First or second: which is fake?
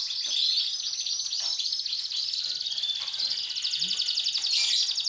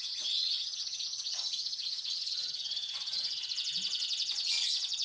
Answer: second